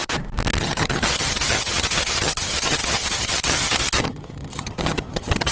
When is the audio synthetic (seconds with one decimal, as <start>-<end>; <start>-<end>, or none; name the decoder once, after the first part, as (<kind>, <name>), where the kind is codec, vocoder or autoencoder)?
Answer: 0.6-5.5 (vocoder, HiFi-GAN)